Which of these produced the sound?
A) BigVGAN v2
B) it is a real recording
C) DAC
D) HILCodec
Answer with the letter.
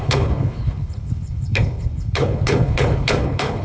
D